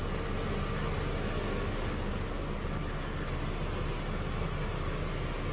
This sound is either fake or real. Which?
real